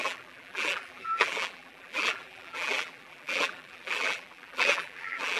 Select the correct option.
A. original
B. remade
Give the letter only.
B